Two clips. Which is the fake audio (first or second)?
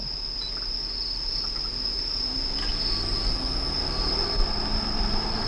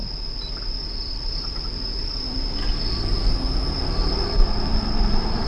second